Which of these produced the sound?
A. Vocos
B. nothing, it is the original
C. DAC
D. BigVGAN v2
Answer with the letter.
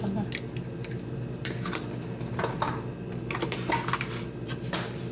B